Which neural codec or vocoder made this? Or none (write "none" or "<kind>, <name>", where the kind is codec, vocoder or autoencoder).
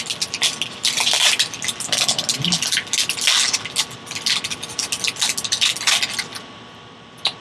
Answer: none